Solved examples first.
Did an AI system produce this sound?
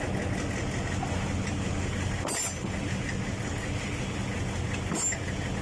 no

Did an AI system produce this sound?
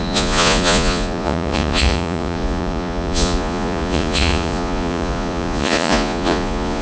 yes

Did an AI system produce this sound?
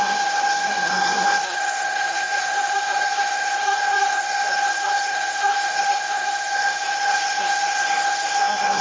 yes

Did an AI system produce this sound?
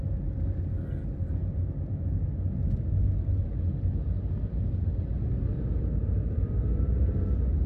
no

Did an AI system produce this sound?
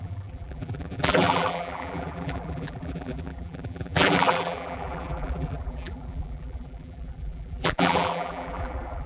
yes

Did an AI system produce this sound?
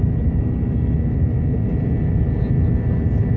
yes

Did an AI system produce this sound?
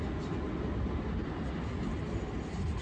no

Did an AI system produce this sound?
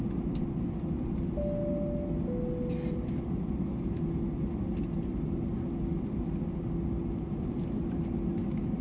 no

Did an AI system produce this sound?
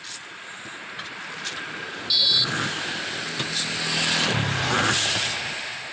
no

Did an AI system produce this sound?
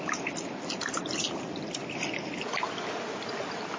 no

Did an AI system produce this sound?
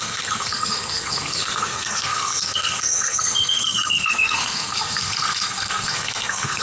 yes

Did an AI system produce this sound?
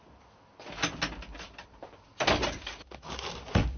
no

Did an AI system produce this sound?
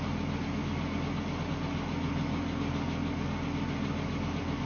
no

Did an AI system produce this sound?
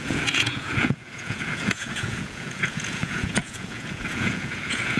yes